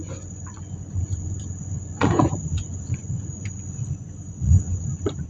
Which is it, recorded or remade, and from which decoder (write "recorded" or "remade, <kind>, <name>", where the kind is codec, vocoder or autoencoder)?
remade, vocoder, Vocos